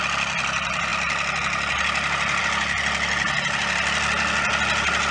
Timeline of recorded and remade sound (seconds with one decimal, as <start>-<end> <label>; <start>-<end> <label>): 0.0-5.1 recorded